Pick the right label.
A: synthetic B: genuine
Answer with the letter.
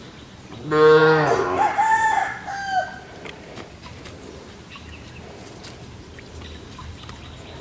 B